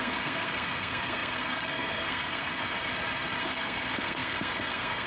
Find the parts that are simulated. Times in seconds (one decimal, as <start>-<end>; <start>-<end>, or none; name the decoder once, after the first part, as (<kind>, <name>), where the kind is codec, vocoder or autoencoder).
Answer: 0.0-2.5 (codec, SNAC); 3.4-5.1